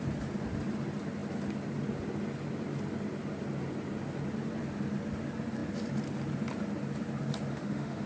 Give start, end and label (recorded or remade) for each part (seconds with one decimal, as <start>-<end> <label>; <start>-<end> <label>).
0.0-7.5 recorded; 7.5-8.1 remade